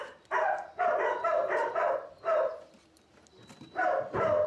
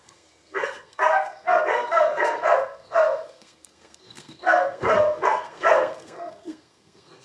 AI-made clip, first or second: second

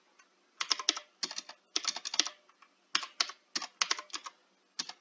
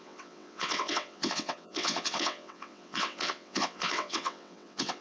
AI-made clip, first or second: second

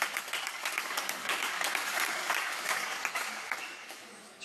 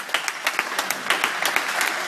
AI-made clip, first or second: first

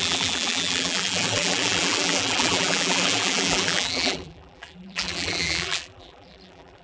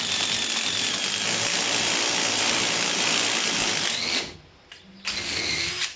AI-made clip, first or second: first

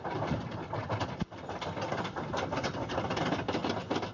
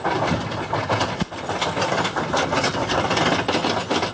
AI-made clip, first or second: first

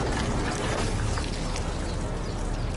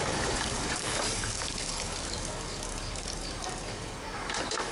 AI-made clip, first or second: second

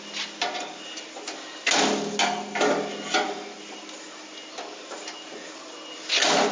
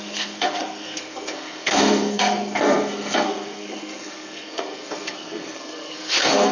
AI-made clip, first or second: second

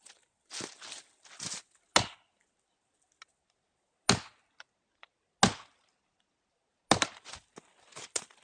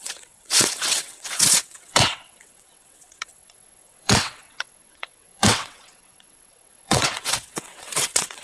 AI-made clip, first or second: second